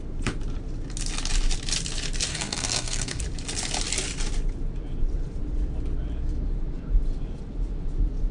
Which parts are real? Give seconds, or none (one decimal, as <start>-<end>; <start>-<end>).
0.0-2.3; 3.2-8.3